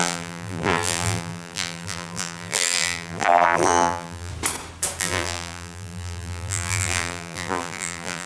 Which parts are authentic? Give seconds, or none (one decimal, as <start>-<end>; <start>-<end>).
4.3-5.0